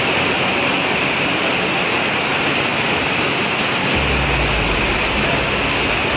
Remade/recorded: recorded